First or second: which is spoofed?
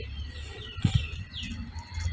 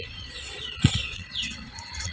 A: second